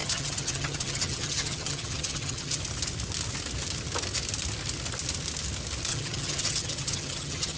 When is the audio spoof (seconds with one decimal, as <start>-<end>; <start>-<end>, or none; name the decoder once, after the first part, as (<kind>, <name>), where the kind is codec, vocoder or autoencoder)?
0.0-2.6 (vocoder, HiFi-GAN); 5.9-7.6